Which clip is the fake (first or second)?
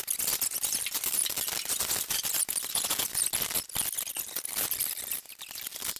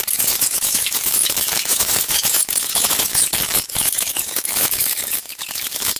second